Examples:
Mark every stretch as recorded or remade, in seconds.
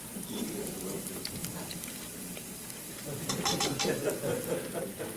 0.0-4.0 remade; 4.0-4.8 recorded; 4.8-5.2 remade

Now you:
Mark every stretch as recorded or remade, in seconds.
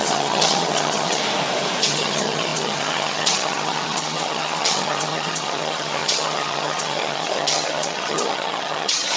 0.0-1.2 remade; 1.2-1.8 recorded; 1.8-9.2 remade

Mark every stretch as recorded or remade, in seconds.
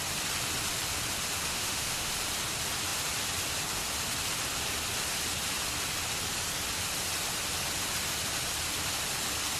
0.0-1.5 recorded; 1.5-2.1 remade; 2.1-9.6 recorded